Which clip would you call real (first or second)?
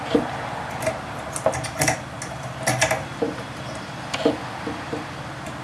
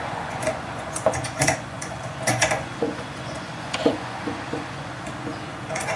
first